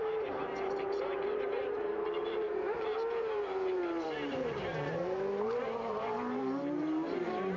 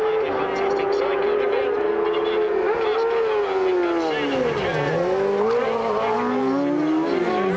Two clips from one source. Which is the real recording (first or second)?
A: second